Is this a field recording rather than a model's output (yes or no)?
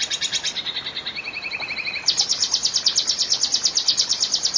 yes